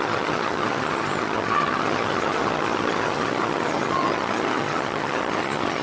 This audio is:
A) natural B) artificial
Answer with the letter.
B